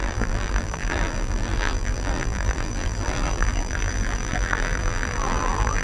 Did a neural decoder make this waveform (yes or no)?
yes